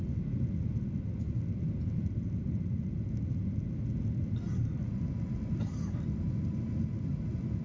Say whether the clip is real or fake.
real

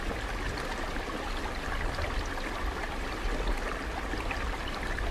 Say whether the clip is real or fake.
real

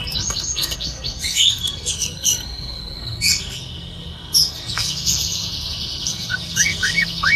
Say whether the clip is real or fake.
fake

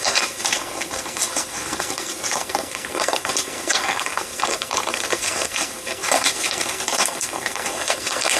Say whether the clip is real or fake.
fake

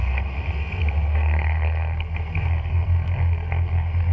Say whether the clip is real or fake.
fake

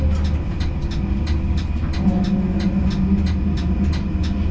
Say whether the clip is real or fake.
real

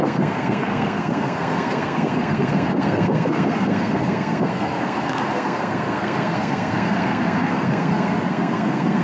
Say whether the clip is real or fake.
fake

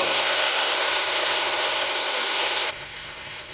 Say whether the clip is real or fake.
fake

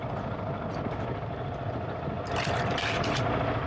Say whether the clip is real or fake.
real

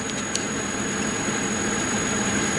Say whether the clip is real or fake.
real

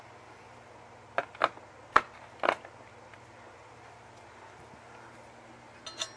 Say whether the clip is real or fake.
real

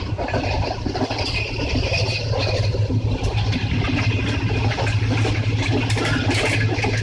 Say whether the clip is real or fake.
real